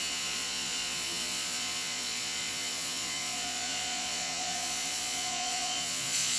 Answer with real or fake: fake